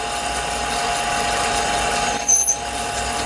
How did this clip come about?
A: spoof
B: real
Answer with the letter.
B